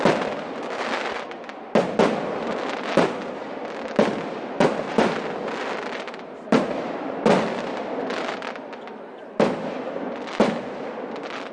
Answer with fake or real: real